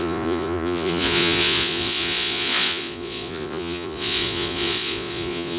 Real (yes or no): no